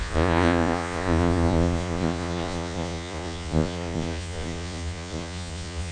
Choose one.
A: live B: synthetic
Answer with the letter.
B